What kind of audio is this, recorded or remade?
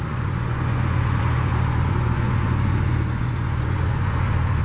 remade